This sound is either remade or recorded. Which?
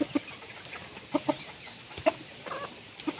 remade